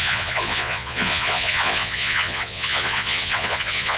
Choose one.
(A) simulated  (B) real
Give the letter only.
A